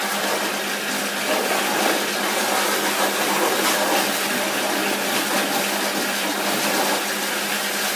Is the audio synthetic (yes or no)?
no